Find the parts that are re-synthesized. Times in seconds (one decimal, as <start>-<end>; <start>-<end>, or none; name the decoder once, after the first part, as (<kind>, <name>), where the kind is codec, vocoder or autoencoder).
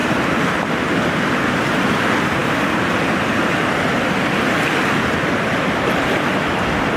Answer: 0.0-0.7 (vocoder, BigVGAN v2)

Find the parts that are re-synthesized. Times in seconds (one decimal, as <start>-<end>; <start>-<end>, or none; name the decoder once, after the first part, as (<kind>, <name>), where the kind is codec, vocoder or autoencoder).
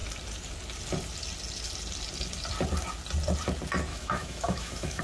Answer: 3.9-5.0 (autoencoder, DAC-VAE)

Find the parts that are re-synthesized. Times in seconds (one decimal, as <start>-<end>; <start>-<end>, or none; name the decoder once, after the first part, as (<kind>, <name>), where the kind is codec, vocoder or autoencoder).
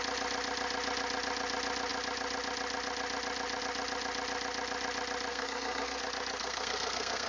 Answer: 5.3-6.0 (codec, SNAC); 6.4-7.3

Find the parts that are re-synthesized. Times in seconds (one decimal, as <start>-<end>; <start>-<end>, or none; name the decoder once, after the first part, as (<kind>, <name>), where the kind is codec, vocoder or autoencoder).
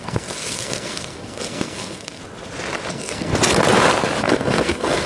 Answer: 0.0-2.2 (codec, SNAC); 2.9-3.3; 4.2-5.1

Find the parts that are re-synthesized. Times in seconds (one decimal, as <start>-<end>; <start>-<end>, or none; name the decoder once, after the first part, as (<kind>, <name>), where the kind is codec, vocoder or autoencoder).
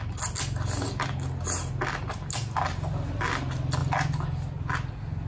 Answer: none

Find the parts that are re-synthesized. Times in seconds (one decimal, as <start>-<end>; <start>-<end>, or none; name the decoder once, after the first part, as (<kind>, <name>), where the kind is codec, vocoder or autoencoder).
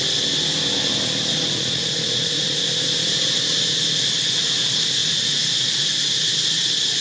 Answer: 1.3-2.6 (vocoder, Vocos); 5.0-6.3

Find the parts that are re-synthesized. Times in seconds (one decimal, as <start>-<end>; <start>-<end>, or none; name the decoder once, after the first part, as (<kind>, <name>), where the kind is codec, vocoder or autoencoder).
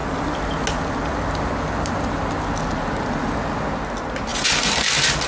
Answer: none